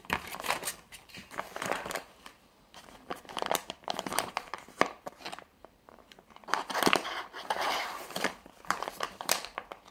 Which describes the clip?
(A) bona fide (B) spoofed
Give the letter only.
B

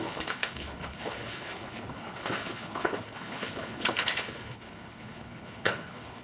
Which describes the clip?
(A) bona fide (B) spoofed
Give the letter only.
B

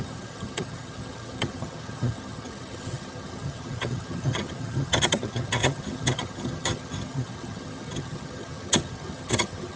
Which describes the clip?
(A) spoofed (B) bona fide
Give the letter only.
A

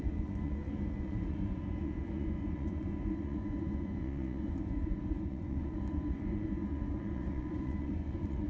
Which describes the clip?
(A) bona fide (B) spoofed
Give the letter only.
B